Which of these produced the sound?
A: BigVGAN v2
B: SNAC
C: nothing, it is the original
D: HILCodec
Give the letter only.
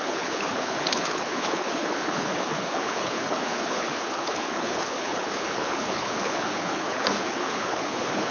D